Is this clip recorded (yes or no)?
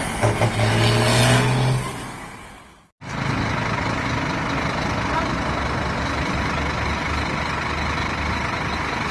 yes